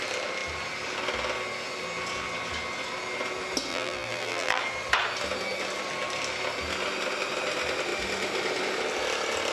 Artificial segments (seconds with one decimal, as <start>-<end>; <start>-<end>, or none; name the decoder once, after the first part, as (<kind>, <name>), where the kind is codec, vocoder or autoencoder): 3.7-4.6 (vocoder, BigVGAN v2)

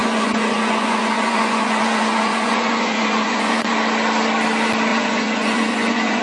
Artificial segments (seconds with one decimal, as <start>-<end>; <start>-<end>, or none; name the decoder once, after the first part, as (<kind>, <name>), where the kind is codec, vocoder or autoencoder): 0.0-3.7 (vocoder, Vocos); 4.9-6.2

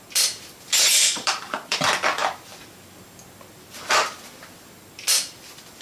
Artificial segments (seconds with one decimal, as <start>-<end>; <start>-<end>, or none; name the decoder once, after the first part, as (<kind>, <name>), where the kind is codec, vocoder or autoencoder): 1.0-1.8 (vocoder, BigVGAN v2)

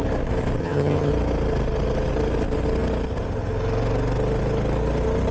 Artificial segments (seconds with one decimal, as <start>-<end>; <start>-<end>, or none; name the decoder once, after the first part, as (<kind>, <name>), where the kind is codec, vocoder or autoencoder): 0.6-1.1 (vocoder, HiFi-GAN)

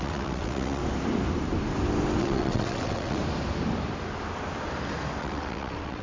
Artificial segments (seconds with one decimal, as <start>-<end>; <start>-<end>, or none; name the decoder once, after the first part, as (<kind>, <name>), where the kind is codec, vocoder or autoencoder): 0.0-0.8 (vocoder, WaveNeXt); 2.2-3.2; 5.2-6.0

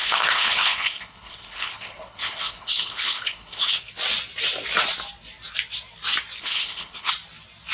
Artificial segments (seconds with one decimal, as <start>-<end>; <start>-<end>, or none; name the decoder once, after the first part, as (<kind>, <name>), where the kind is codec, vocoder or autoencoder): 0.0-3.8 (codec, HILCodec); 6.4-7.1